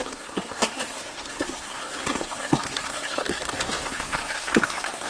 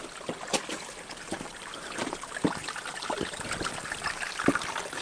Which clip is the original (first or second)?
second